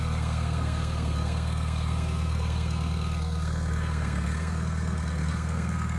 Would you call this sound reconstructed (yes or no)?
yes